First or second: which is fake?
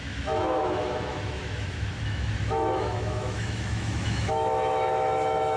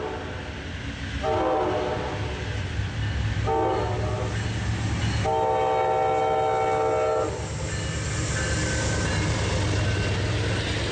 first